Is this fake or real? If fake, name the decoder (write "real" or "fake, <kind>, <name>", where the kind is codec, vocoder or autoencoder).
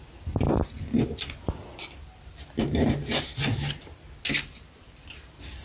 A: real